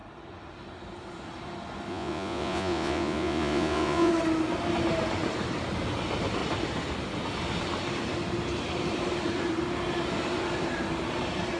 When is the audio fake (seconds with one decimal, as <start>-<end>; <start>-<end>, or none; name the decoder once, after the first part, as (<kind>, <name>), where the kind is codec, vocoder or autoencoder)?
1.9-4.1 (vocoder, Vocos)